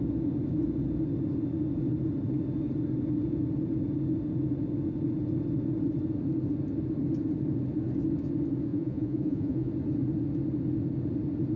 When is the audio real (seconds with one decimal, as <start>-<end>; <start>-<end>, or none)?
0.0-8.7; 9.7-11.6